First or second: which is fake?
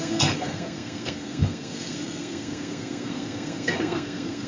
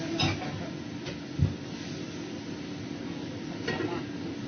first